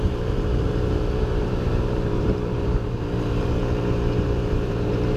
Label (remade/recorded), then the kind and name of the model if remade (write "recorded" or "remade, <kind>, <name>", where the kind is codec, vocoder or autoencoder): remade, vocoder, BigVGAN v2